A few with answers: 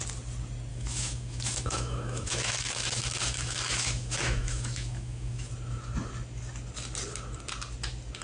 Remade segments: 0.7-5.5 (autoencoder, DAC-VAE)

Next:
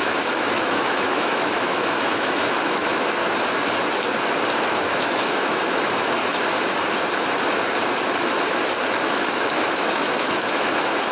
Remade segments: 0.0-3.2 (autoencoder, DAC-VAE); 4.6-6.2; 8.7-11.1

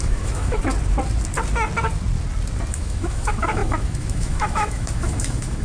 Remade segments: 0.0-0.6 (autoencoder, DAC-VAE); 2.7-5.6